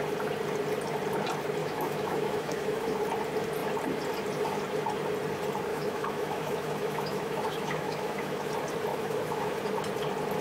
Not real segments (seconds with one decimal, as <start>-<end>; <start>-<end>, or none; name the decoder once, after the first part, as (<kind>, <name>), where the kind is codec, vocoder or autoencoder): 1.6-3.0 (autoencoder, DAC-VAE); 5.7-8.5; 8.9-9.6